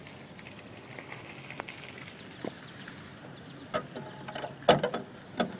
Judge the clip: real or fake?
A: real